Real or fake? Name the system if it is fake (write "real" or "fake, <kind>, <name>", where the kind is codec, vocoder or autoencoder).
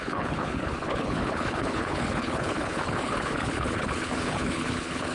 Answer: fake, codec, HILCodec